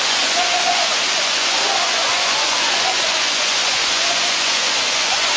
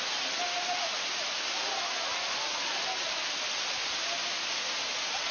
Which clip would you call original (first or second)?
second